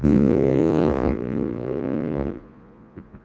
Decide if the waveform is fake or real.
fake